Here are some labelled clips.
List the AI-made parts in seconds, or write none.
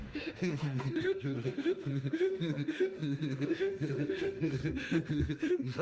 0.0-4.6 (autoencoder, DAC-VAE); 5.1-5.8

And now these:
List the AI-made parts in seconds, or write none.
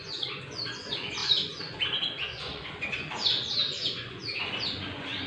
0.0-5.3 (vocoder, Vocos)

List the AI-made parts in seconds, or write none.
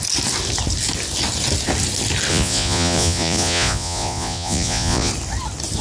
2.3-5.1 (vocoder, Vocos)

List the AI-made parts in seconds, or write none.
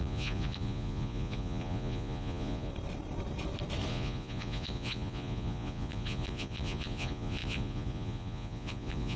0.0-2.7 (vocoder, Vocos); 3.9-9.2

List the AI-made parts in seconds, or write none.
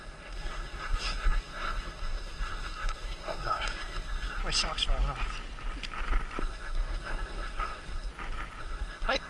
0.0-4.4 (codec, SNAC); 6.4-8.1; 8.6-9.3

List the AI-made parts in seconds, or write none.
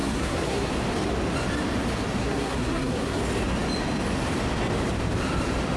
0.0-0.7 (codec, SNAC); 2.2-3.2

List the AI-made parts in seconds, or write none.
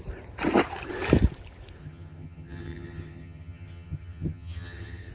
1.8-5.1 (vocoder, HiFi-GAN)